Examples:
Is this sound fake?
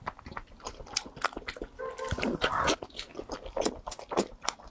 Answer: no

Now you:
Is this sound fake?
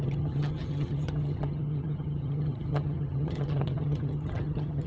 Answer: yes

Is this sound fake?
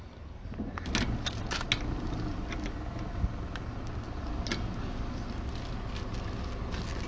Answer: no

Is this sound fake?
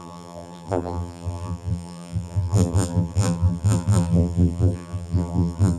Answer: yes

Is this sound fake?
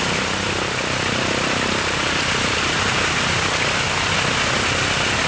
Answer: no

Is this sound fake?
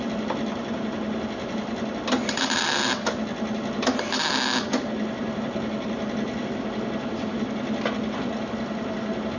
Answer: no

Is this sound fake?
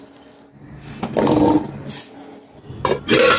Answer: no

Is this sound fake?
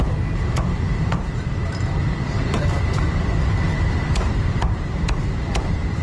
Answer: yes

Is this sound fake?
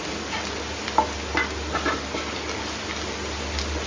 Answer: no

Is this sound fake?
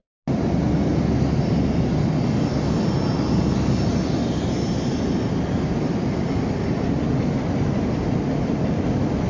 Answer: no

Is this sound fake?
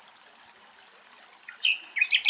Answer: no